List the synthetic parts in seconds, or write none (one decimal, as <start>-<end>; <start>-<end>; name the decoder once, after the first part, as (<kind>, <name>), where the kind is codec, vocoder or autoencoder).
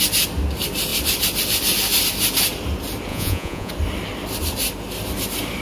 3.1-3.7 (vocoder, Vocos)